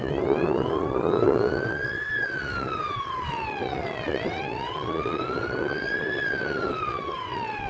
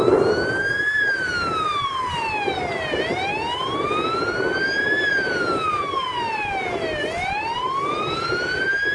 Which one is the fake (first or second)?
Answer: first